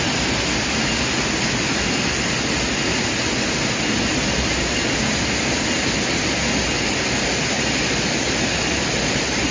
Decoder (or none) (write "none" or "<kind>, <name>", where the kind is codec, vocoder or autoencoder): none